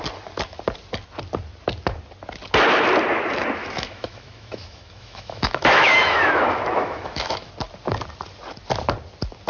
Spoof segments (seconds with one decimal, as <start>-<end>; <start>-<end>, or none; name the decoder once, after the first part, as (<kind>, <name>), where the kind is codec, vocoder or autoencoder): 3.6-7.5 (autoencoder, DAC-VAE)